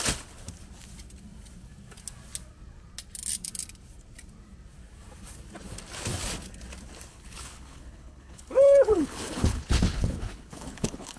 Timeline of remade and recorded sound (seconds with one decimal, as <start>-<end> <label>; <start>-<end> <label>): 0.0-7.1 recorded; 7.1-11.2 remade